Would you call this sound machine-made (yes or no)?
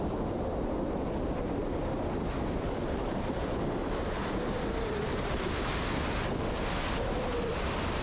no